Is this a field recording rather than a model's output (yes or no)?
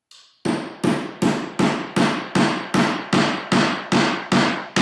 yes